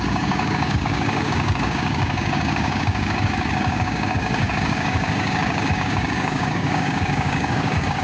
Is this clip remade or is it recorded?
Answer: remade